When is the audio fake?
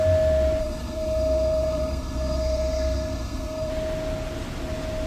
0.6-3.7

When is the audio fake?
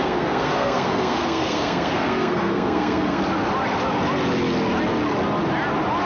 0.0-3.2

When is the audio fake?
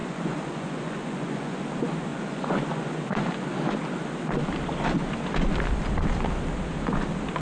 0.0-1.6; 2.1-3.3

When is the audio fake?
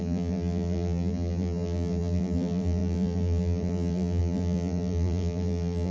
0.0-5.9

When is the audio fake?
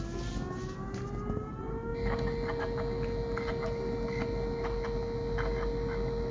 none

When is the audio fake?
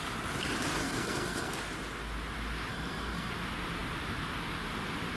0.8-1.5; 2.7-3.3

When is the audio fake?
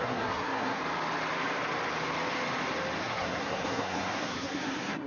0.0-0.8; 3.0-5.1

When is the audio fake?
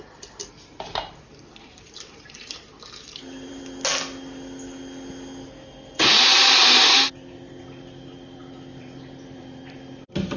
0.5-3.6; 8.7-10.0